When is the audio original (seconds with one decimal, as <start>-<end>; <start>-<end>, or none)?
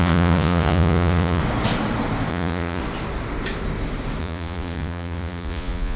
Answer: 1.4-2.3; 2.8-4.2